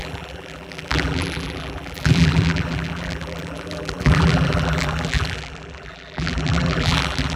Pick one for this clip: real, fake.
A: fake